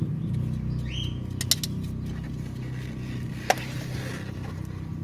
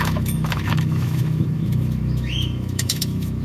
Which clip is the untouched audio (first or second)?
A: first